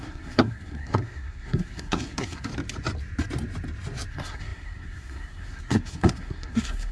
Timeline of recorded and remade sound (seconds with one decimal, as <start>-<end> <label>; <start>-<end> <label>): 0.0-2.5 remade; 2.5-4.1 recorded; 4.1-6.9 remade